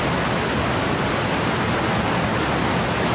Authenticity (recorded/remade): recorded